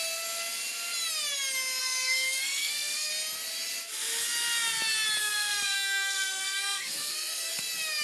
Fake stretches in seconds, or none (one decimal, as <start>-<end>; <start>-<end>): 1.8-3.1; 5.2-7.5

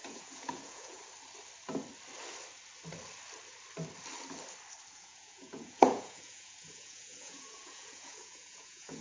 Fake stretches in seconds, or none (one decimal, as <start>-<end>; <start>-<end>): 0.0-1.0; 4.9-9.0